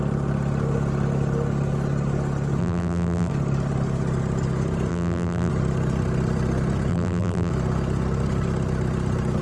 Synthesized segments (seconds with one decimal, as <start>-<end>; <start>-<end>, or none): 2.6-3.3; 4.9-5.5; 6.9-7.5